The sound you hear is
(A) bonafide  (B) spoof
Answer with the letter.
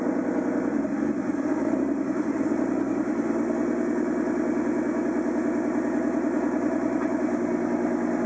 A